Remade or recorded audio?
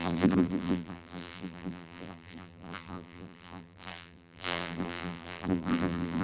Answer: remade